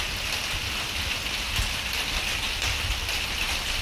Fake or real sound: real